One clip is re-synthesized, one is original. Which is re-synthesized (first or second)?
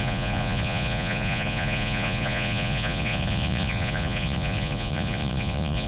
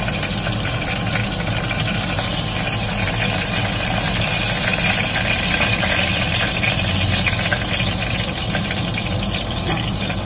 first